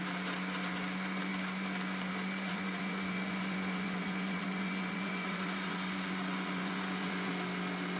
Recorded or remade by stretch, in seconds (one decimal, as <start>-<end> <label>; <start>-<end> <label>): 0.0-2.5 recorded; 2.5-7.3 remade; 7.3-8.0 recorded